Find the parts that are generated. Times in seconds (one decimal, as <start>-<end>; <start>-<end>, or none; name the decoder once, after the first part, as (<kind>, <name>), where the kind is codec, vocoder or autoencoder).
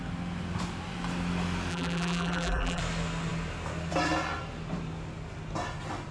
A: 1.7-2.8 (vocoder, BigVGAN v2)